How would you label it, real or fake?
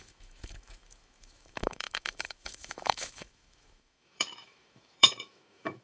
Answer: fake